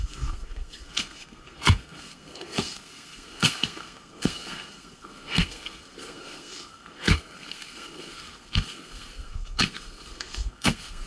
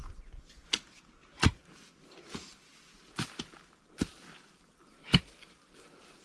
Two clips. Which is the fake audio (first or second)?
first